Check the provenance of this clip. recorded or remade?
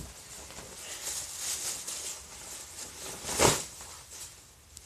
recorded